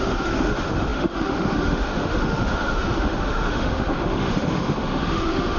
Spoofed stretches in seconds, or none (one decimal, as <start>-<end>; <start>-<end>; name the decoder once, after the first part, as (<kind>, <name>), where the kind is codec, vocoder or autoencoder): 0.0-5.6 (autoencoder, DAC-VAE)